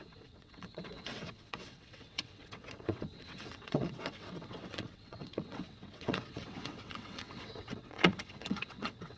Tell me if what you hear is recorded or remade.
remade